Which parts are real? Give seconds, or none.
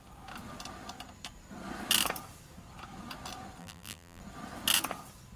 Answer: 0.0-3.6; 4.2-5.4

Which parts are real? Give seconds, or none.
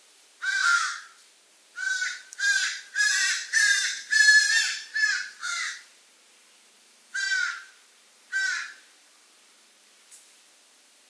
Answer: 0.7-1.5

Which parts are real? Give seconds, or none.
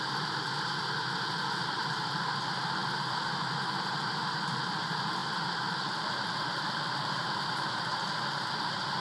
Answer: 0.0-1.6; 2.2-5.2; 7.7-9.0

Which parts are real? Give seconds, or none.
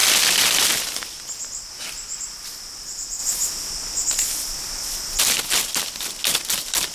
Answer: 0.0-6.9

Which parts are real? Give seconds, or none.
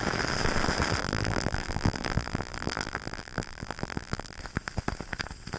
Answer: 0.0-1.0; 4.4-5.6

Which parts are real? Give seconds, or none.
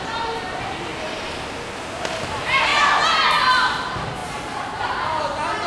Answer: 0.0-0.9; 1.4-4.2; 5.0-5.7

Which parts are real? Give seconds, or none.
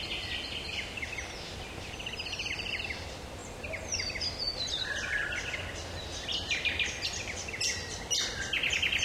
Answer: 0.0-9.0